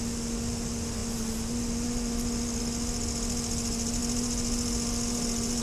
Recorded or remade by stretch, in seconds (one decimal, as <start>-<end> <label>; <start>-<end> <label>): 0.0-5.6 recorded